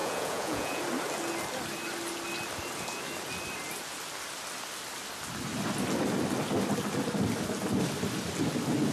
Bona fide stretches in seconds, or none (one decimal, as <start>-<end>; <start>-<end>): 0.8-8.9